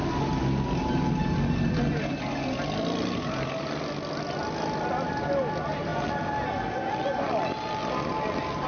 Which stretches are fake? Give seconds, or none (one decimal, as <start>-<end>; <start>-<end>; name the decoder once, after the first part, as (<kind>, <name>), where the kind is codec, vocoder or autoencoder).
none